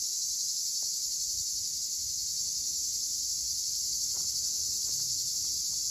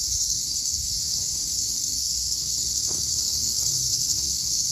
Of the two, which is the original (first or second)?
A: first